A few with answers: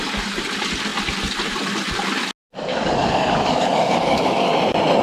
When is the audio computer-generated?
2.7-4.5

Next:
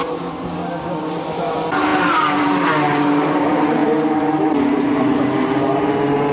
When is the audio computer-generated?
0.6-1.1

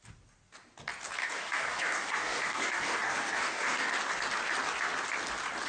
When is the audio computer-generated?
1.2-3.9